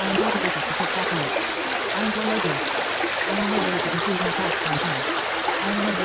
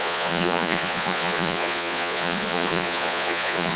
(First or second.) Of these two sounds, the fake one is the second